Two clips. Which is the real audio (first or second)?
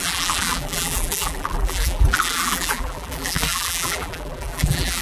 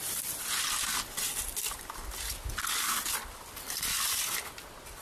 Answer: second